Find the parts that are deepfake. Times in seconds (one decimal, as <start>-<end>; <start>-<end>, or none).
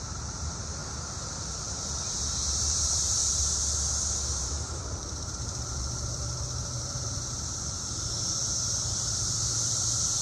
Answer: 0.0-0.8; 1.5-3.2; 4.4-10.2